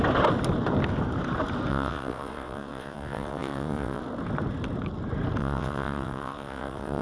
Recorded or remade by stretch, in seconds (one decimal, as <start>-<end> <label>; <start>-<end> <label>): 0.0-1.7 recorded; 1.7-4.0 remade; 4.0-5.4 recorded; 5.4-7.0 remade